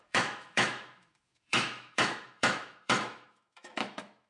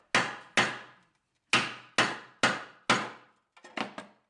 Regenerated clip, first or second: first